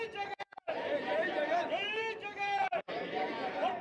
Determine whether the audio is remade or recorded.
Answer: remade